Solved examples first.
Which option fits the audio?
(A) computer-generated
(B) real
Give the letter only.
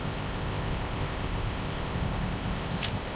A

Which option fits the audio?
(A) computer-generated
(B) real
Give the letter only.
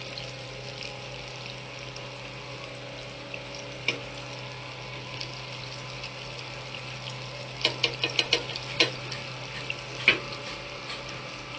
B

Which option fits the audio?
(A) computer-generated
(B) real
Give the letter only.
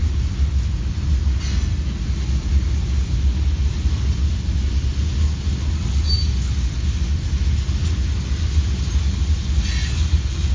B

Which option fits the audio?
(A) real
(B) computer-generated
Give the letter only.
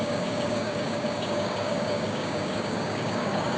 B